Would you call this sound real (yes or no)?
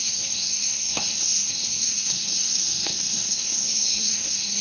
no